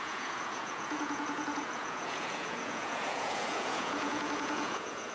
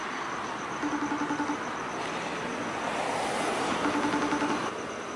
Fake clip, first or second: first